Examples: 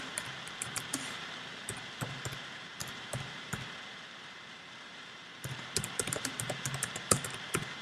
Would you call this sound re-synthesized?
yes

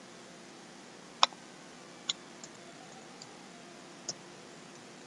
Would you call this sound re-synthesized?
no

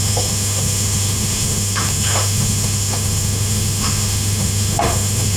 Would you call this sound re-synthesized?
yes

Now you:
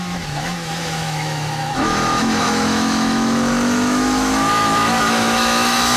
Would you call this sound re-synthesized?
yes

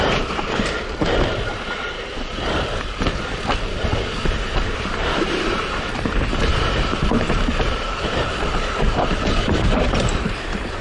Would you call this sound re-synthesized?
yes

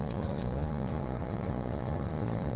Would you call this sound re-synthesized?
yes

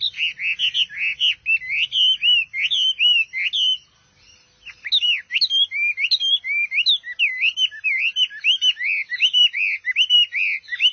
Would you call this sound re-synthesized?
no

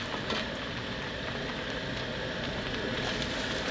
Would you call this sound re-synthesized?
no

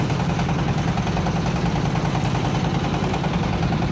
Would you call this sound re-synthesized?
yes